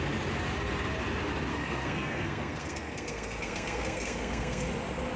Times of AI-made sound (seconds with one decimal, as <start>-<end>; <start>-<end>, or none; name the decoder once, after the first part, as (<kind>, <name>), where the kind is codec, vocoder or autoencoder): 1.5-4.6 (codec, SNAC)